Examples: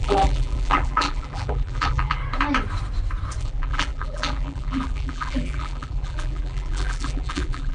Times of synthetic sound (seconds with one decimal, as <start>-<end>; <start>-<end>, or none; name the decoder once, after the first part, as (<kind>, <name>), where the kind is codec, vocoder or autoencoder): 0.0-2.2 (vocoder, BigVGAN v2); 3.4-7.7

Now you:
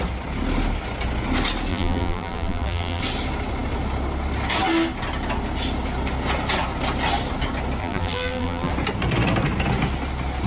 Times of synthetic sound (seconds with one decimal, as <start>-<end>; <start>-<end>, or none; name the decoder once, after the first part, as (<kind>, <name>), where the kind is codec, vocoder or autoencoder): 1.7-3.0 (vocoder, BigVGAN v2); 7.8-8.7

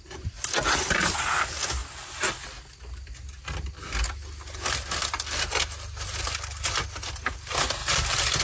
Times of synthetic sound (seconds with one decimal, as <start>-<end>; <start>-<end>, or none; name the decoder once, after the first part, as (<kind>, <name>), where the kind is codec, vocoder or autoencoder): 7.8-8.4 (vocoder, BigVGAN v2)

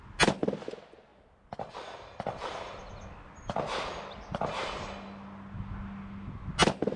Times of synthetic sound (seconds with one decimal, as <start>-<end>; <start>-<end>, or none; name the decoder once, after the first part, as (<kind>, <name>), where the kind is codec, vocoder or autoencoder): none

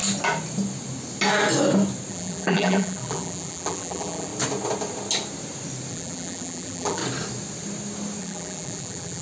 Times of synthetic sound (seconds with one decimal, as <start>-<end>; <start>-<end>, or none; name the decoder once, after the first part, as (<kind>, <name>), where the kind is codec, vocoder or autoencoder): 2.1-4.3 (vocoder, BigVGAN v2); 5.9-7.0; 8.2-9.2